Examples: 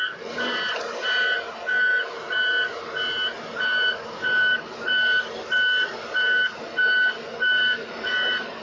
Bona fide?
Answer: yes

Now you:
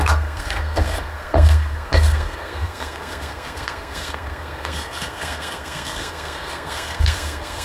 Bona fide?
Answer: no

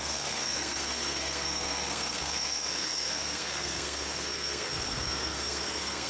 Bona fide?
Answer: no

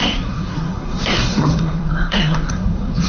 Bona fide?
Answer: no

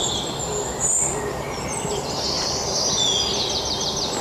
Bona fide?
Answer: yes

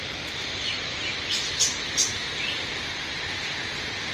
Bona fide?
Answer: yes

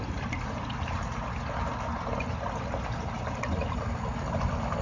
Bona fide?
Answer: yes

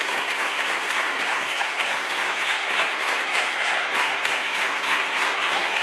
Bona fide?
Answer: no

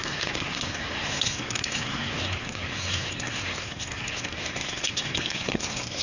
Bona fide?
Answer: no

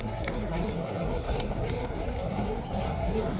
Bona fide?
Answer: no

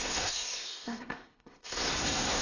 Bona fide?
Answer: no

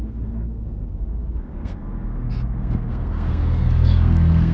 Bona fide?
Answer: no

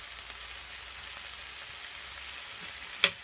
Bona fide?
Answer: yes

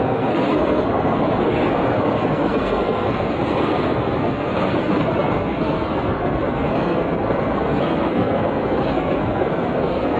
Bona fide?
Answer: no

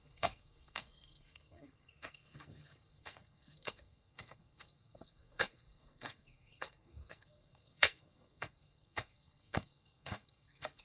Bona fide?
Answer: no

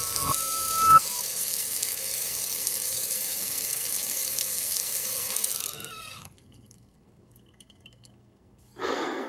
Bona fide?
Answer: no